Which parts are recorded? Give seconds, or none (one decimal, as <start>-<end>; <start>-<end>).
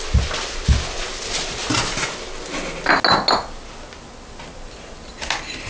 0.0-5.7